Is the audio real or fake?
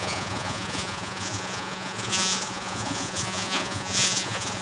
fake